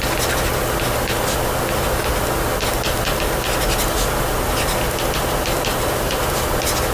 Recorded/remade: recorded